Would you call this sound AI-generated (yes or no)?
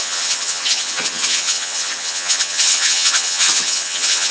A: yes